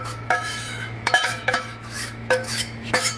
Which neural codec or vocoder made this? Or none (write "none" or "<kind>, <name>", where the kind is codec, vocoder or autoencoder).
autoencoder, DAC-VAE